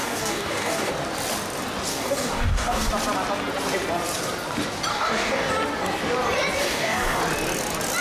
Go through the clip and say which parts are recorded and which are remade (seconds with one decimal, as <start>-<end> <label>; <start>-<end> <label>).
0.0-0.9 remade; 0.9-1.9 recorded; 1.9-2.9 remade; 2.9-4.9 recorded; 4.9-5.5 remade; 5.5-6.6 recorded; 6.6-7.2 remade; 7.2-8.0 recorded